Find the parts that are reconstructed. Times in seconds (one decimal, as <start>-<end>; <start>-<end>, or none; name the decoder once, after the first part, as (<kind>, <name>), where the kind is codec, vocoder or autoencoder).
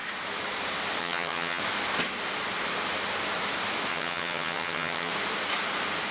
1.0-1.6 (vocoder, HiFi-GAN); 3.9-5.1